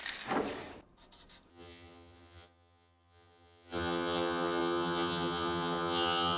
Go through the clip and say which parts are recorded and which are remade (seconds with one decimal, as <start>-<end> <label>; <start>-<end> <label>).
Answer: 0.0-1.5 recorded; 1.5-6.4 remade